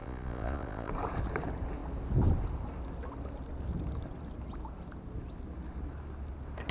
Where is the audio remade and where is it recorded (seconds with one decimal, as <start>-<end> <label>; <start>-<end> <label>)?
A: 0.0-0.9 remade; 0.9-6.7 recorded

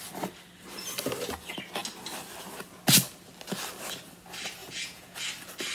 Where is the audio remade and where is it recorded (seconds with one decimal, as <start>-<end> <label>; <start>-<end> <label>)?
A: 0.0-4.6 recorded; 4.6-5.2 remade; 5.2-5.7 recorded

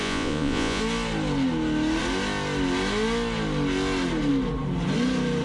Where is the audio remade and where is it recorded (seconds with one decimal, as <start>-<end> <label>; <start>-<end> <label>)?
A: 0.0-0.8 remade; 0.8-5.4 recorded

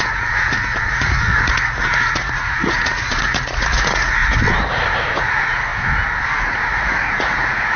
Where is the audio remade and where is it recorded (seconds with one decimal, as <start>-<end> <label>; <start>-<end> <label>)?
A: 0.0-4.2 remade; 4.2-5.1 recorded; 5.1-5.7 remade; 5.7-6.4 recorded; 6.4-7.8 remade

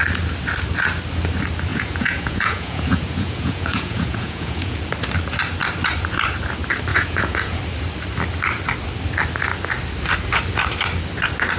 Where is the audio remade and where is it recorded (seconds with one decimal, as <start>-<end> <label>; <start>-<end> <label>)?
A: 0.0-1.7 recorded; 1.7-4.8 remade; 4.8-6.9 recorded; 6.9-7.6 remade; 7.6-11.6 recorded

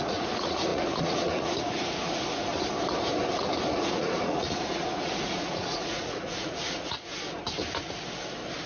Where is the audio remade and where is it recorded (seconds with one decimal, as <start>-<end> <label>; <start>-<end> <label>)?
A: 0.0-2.5 remade; 2.5-3.7 recorded; 3.7-7.1 remade; 7.1-8.7 recorded

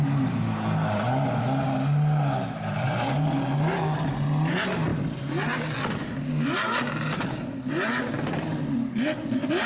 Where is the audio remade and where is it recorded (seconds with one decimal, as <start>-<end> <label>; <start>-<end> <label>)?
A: 0.0-9.7 recorded